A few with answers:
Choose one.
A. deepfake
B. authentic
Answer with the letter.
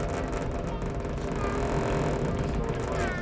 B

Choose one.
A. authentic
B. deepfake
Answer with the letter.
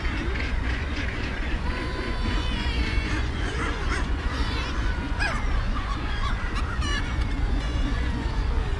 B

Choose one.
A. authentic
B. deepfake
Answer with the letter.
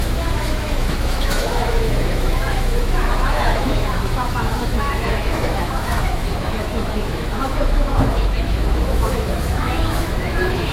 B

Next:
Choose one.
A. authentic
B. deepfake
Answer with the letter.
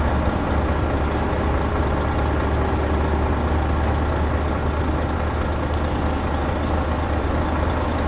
A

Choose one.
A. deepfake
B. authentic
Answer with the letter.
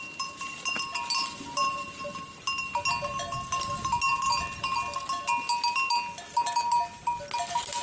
B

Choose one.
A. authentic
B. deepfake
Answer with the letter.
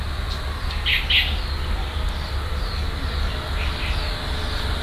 A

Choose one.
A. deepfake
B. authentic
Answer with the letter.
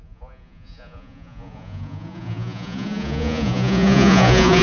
A